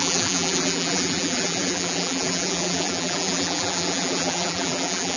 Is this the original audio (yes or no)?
no